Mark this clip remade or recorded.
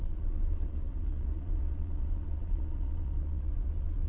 remade